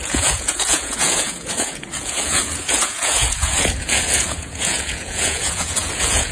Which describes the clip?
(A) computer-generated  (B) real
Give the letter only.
A